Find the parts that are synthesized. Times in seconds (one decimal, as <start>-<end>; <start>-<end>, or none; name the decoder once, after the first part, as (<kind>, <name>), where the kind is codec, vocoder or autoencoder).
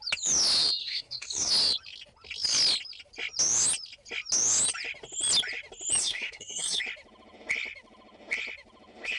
0.8-1.5 (codec, SNAC); 6.0-6.8